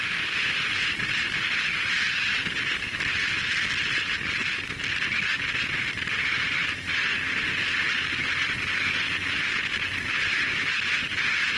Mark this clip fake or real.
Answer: real